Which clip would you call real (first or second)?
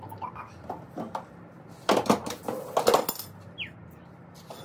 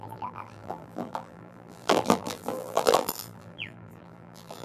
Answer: first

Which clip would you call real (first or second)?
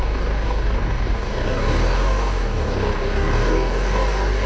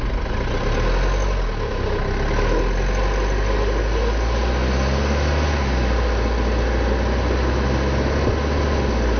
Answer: second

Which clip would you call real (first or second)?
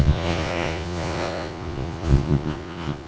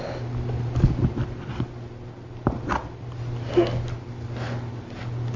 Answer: second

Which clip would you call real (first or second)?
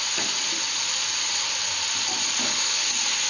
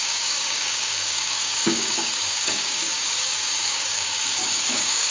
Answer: first